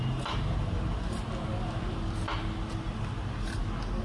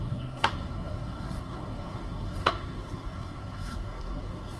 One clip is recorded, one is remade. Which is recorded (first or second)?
first